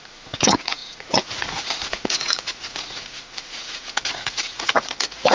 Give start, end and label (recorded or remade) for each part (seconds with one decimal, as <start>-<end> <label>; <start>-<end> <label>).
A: 0.0-5.3 remade